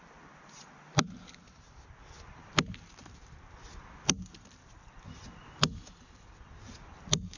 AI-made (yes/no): no